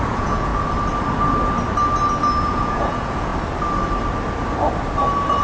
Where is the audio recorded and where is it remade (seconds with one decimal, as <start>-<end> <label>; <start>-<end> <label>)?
0.0-0.5 remade; 0.5-2.4 recorded; 2.4-3.3 remade; 3.3-5.4 recorded

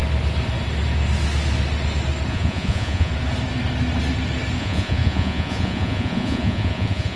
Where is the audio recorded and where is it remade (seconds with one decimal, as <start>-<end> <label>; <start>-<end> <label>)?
0.0-2.3 recorded; 2.3-3.1 remade; 3.1-4.6 recorded; 4.6-7.2 remade

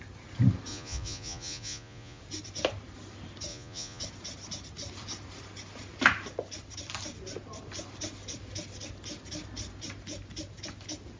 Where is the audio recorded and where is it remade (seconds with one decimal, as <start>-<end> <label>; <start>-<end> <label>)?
0.0-0.7 recorded; 0.7-2.2 remade; 2.2-3.5 recorded; 3.5-4.0 remade; 4.0-11.2 recorded

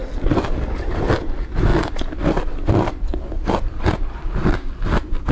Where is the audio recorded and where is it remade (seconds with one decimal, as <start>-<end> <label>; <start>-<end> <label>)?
0.0-5.3 recorded

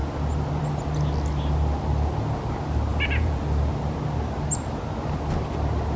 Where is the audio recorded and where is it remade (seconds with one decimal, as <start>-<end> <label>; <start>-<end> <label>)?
0.0-2.9 recorded; 2.9-3.4 remade; 3.4-6.0 recorded

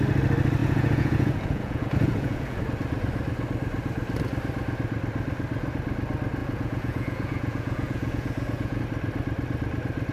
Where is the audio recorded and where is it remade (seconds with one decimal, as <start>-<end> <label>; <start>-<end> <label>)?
0.0-0.6 recorded; 0.6-2.6 remade; 2.6-6.4 recorded; 6.4-8.8 remade; 8.8-10.1 recorded

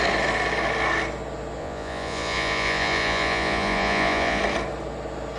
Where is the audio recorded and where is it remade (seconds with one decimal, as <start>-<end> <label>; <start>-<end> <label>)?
0.0-1.6 recorded; 1.6-4.4 remade; 4.4-5.4 recorded